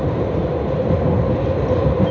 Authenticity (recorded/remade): recorded